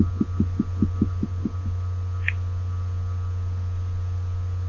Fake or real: real